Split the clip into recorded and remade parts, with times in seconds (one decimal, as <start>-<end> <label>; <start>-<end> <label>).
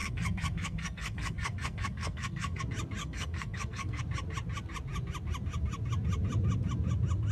0.0-2.6 remade; 2.6-3.0 recorded; 3.0-4.0 remade; 4.0-7.3 recorded